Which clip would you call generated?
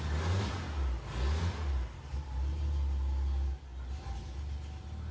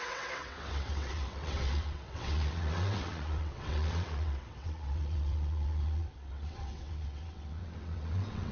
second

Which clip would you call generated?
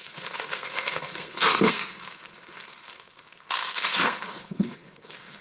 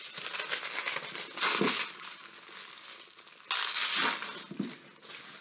first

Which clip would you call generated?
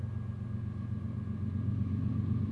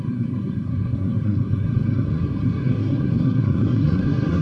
second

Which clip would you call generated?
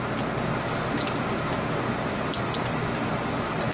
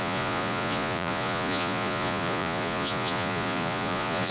second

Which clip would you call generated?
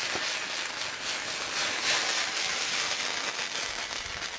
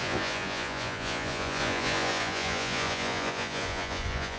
second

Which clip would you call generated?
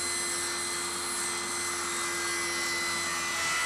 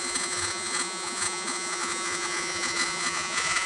second